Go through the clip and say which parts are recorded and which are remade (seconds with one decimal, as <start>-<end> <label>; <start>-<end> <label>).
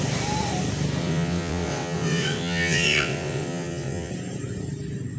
0.0-1.0 recorded; 1.0-4.1 remade; 4.1-5.2 recorded